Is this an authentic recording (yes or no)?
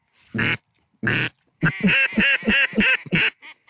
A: yes